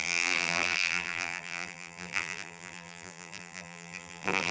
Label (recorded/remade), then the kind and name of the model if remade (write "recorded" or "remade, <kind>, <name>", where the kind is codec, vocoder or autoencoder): remade, vocoder, BigVGAN v2